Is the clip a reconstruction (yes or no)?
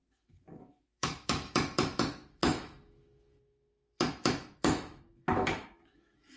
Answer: yes